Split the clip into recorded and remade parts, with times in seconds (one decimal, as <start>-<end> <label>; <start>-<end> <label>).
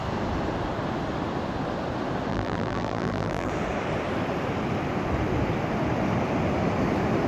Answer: 0.0-2.3 recorded; 2.3-3.5 remade; 3.5-7.3 recorded